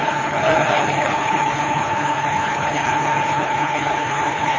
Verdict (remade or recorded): remade